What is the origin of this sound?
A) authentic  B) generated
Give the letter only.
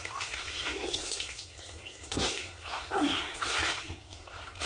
B